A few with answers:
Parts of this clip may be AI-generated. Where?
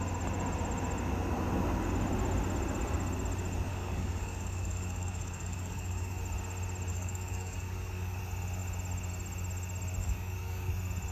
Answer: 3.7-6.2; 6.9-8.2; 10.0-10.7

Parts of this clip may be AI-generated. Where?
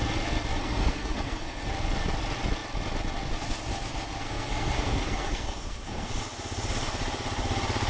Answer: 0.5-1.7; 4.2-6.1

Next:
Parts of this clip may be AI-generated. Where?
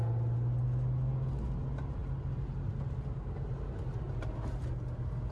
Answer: none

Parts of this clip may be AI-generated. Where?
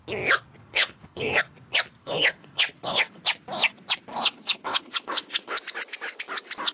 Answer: 0.6-1.4; 2.0-3.2; 4.1-5.6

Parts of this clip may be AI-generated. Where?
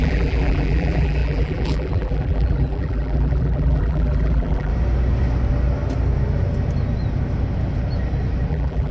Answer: 0.0-4.7; 8.5-8.9